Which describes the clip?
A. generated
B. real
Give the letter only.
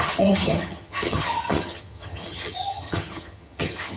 A